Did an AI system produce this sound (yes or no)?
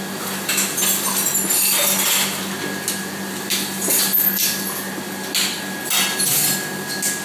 no